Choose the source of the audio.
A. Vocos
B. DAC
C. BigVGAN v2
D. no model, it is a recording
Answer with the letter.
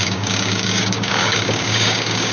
B